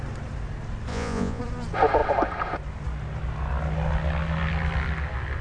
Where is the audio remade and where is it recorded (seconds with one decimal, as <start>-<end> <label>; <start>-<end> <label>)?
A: 0.0-0.9 recorded; 0.9-1.4 remade; 1.4-5.4 recorded